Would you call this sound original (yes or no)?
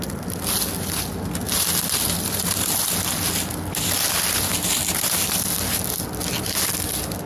yes